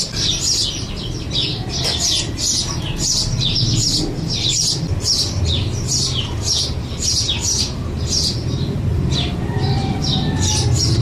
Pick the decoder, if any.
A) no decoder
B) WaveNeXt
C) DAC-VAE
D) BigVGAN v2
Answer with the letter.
A